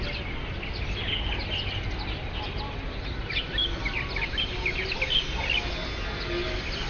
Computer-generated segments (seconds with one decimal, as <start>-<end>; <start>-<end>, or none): none